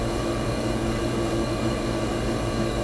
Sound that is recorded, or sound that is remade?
remade